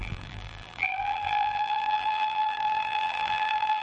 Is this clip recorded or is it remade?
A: remade